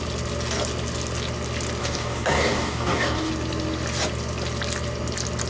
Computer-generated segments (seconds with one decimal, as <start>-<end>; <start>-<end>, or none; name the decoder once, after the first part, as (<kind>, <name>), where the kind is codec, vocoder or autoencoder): 1.8-3.3 (codec, DAC)